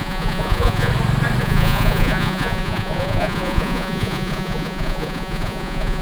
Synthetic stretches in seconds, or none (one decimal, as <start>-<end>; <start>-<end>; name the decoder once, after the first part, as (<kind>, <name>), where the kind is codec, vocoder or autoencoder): 0.0-0.9 (vocoder, Vocos); 1.4-6.0